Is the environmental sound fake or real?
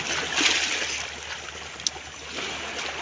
real